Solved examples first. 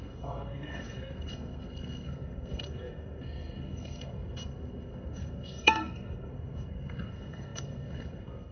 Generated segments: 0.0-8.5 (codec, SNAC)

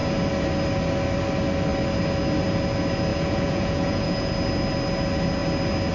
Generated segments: 3.1-4.3 (vocoder, Vocos)